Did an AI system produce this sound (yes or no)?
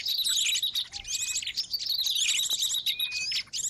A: no